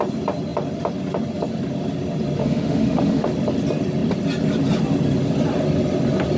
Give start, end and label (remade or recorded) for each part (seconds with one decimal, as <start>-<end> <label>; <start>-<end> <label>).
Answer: 0.0-2.4 recorded; 2.4-3.3 remade; 3.3-6.4 recorded